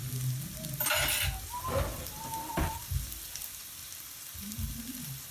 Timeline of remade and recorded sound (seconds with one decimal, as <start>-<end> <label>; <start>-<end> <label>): 0.0-1.9 recorded; 1.9-5.3 remade